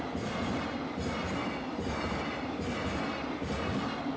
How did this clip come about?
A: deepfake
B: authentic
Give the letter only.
B